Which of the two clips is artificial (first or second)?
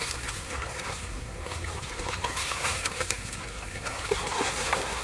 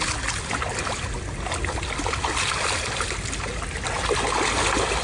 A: first